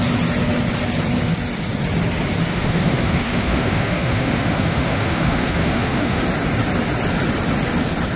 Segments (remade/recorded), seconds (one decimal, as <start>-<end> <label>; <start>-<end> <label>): 0.0-2.5 recorded; 2.5-6.2 remade; 6.2-8.2 recorded